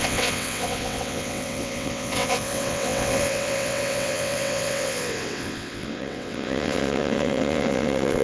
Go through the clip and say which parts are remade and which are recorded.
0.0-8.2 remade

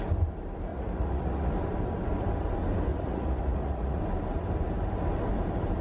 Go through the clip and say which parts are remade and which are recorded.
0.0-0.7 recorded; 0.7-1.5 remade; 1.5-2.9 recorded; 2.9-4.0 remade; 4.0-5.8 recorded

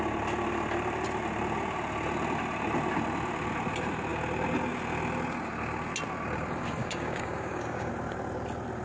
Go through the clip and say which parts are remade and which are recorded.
0.0-6.8 recorded; 6.8-7.9 remade; 7.9-8.8 recorded